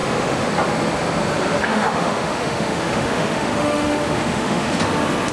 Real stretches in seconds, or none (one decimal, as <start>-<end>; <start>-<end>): 0.5-1.6; 4.8-5.3